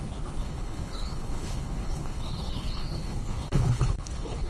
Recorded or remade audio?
remade